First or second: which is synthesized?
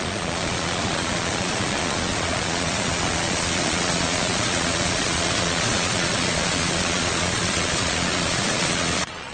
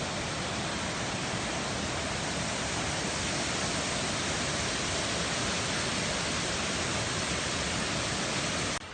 first